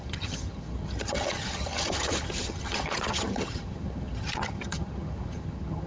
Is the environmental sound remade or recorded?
remade